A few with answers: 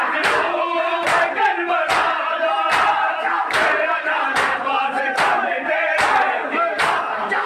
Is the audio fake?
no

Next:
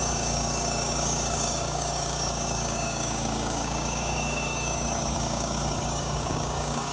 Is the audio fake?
yes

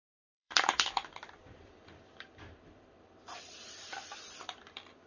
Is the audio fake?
yes